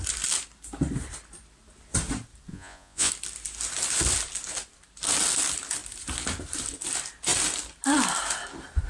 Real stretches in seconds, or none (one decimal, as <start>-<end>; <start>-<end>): 0.0-2.5; 3.1-8.9